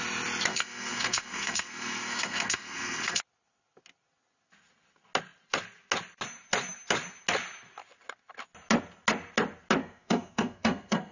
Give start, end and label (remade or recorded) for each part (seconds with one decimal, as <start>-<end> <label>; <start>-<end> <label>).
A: 0.0-0.5 recorded; 0.5-3.2 remade; 3.2-9.8 recorded; 9.8-11.1 remade